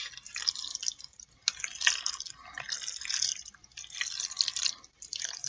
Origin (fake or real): real